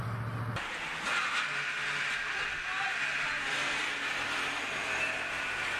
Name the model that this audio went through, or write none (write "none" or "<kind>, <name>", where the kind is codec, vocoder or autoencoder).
none